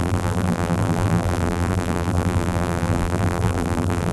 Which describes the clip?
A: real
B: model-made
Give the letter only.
B